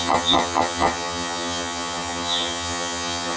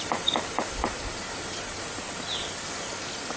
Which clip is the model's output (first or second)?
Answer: first